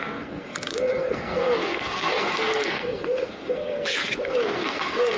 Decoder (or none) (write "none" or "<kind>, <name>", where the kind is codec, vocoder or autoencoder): codec, SNAC